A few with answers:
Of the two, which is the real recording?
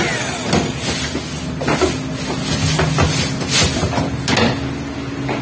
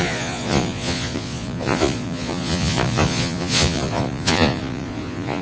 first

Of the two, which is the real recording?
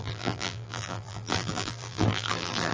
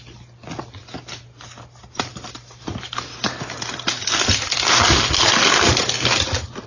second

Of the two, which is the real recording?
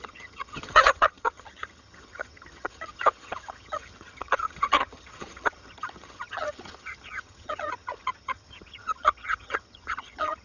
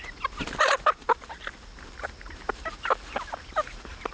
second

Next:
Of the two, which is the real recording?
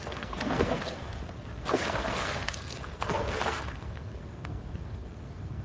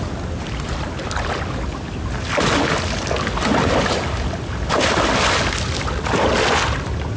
second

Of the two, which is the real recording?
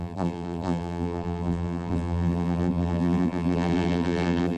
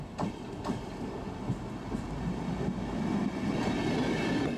second